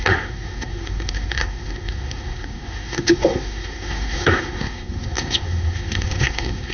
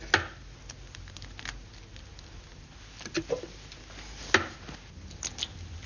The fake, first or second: first